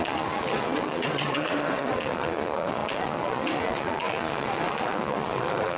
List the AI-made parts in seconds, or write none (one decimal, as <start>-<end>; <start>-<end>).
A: 0.0-5.8